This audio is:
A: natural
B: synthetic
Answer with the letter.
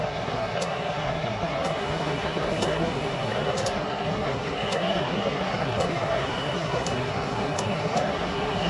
B